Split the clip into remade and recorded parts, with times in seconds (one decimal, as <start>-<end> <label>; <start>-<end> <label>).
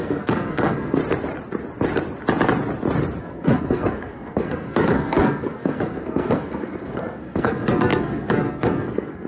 0.0-1.0 remade; 1.0-3.2 recorded; 3.2-9.3 remade